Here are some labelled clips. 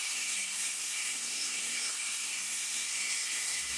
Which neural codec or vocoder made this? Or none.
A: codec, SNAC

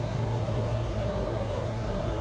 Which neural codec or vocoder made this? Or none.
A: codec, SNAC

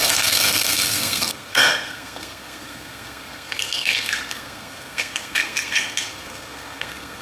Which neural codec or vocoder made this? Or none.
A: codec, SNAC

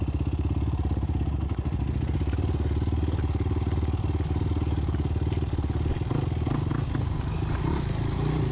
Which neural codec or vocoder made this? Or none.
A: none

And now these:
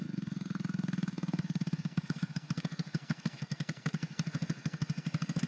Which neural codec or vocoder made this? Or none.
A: codec, SNAC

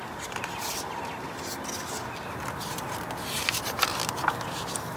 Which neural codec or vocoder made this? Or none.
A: none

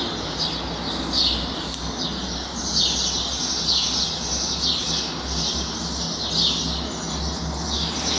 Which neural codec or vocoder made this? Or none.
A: none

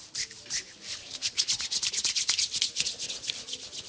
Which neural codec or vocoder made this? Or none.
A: none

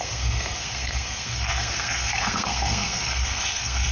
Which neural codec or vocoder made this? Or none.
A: codec, SNAC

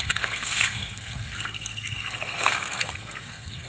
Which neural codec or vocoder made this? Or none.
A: codec, SNAC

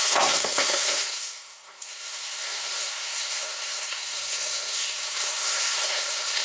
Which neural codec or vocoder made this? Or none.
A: codec, SNAC